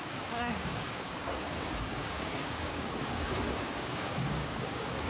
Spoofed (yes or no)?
yes